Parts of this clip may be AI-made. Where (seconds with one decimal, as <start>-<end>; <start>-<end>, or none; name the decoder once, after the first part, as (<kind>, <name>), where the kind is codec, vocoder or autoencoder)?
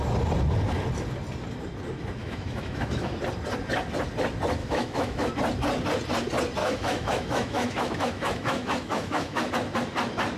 2.2-3.2 (autoencoder, DAC-VAE); 4.6-5.3; 6.6-9.5